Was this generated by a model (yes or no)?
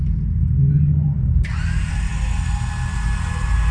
no